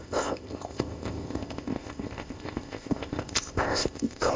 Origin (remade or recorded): remade